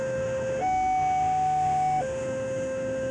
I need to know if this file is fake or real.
fake